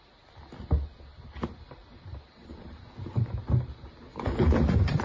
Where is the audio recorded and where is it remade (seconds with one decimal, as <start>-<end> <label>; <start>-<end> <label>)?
0.0-0.9 recorded; 0.9-3.0 remade; 3.0-4.1 recorded; 4.1-5.0 remade